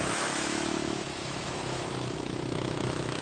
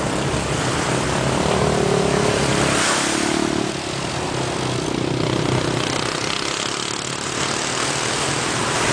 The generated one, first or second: first